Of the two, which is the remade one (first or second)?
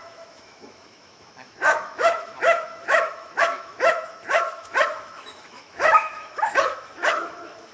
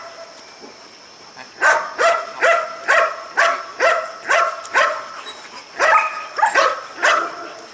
first